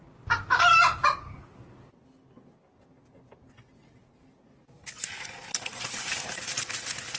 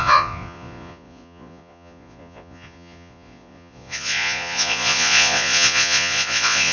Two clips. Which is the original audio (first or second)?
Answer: first